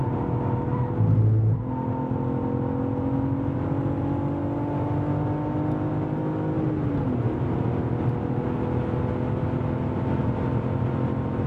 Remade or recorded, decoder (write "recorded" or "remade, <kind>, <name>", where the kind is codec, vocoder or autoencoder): recorded